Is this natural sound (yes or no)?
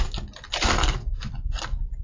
yes